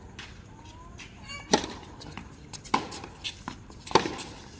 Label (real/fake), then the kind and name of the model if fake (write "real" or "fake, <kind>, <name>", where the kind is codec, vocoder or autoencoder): real